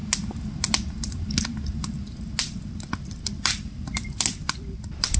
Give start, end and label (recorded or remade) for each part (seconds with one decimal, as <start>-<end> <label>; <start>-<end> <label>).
0.0-2.7 recorded; 2.7-5.2 remade